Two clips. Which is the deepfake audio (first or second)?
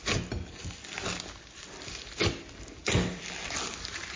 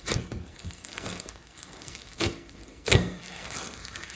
second